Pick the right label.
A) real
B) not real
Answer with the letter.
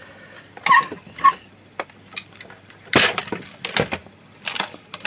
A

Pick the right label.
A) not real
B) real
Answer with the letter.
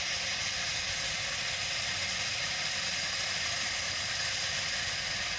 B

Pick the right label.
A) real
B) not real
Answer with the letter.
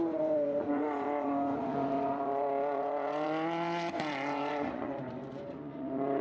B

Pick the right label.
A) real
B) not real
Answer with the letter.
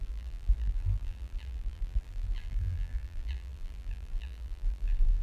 B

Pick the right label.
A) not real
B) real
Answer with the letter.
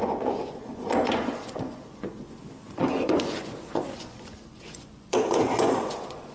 A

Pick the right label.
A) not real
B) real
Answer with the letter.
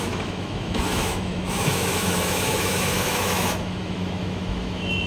A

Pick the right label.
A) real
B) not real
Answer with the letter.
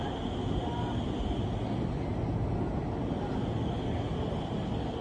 A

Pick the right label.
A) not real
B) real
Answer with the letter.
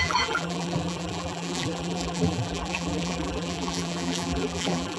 A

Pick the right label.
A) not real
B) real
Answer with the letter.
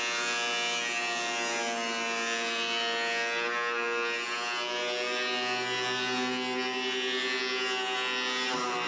B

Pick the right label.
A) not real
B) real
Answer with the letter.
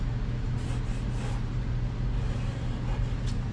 B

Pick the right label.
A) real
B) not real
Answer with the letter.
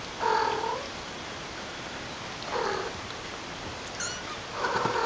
A